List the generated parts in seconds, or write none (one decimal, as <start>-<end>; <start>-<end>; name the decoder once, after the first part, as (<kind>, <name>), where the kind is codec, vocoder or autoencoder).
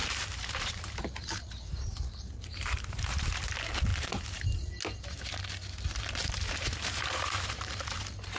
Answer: 0.0-3.5 (vocoder, BigVGAN v2); 3.9-4.8; 6.2-8.0